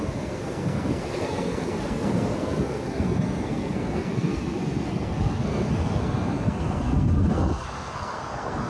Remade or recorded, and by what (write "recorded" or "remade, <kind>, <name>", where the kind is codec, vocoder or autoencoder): remade, codec, SNAC